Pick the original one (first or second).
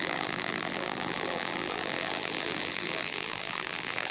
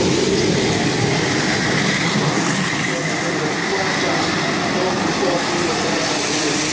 second